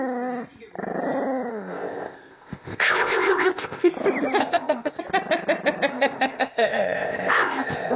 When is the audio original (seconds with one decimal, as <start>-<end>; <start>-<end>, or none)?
0.0-1.5; 3.9-4.4; 5.0-5.9